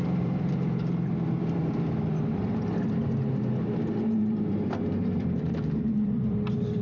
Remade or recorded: remade